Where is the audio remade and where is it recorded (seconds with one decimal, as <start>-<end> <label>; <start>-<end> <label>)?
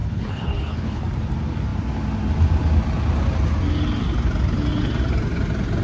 0.0-1.0 remade; 1.0-5.8 recorded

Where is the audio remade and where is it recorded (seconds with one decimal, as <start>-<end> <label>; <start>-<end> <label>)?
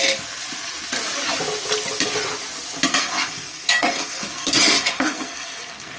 0.0-2.9 recorded; 2.9-6.0 remade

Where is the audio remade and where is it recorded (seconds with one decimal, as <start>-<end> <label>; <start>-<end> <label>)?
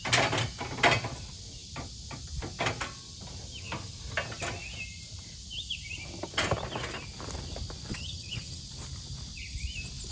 0.0-7.9 recorded; 7.9-8.6 remade; 8.6-10.1 recorded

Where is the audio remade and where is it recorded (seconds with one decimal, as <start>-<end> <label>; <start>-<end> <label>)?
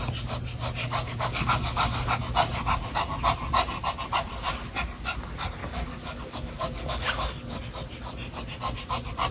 0.0-0.8 recorded; 0.8-2.2 remade; 2.2-5.6 recorded; 5.6-7.6 remade; 7.6-9.3 recorded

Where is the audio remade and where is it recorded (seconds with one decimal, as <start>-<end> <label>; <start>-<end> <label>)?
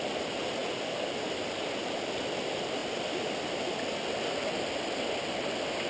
0.0-5.9 recorded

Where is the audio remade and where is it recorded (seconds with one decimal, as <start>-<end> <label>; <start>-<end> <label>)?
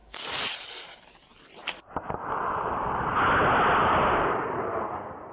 0.0-2.3 remade; 2.3-3.8 recorded; 3.8-4.8 remade; 4.8-5.3 recorded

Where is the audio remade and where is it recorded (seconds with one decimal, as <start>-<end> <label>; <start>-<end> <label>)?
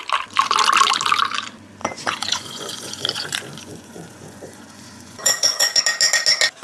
0.0-1.8 recorded; 1.8-5.8 remade; 5.8-6.6 recorded